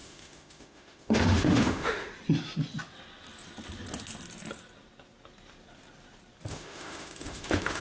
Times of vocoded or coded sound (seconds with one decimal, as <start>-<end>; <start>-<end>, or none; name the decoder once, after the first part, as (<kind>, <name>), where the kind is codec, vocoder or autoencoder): 0.0-2.1 (autoencoder, DAC-VAE); 6.5-7.8